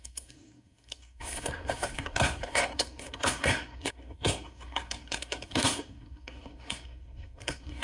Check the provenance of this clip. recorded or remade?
remade